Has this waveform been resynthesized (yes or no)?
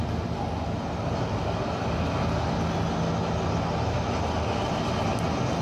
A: no